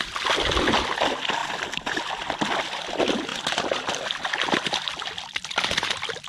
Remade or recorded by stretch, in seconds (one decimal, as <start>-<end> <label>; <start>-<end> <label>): 0.0-6.3 remade

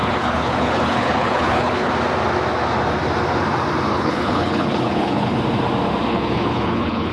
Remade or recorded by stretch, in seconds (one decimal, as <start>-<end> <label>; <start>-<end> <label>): 0.0-1.9 remade; 1.9-3.9 recorded; 3.9-5.4 remade; 5.4-6.1 recorded; 6.1-7.1 remade